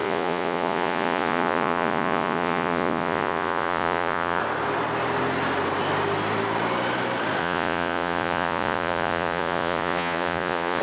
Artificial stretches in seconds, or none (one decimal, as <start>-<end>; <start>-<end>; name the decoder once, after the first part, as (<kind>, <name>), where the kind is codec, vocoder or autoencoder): 0.0-4.4 (vocoder, Vocos); 7.4-10.8